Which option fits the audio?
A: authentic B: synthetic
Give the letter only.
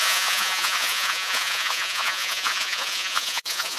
B